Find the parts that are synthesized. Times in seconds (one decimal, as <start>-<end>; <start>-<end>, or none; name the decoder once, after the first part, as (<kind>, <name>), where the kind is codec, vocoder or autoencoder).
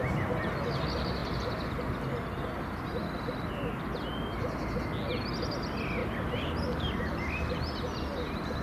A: 6.0-7.3 (vocoder, BigVGAN v2)